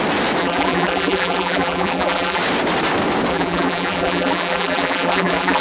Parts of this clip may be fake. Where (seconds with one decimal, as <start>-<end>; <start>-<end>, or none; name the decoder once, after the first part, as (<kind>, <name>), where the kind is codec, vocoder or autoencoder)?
0.4-2.4 (vocoder, BigVGAN v2); 3.3-5.6